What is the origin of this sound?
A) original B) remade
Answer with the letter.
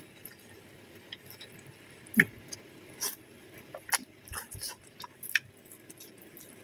A